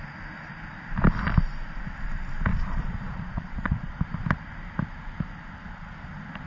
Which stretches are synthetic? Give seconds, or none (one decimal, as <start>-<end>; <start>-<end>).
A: 2.5-3.9